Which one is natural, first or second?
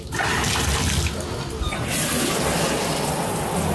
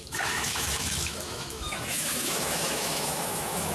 first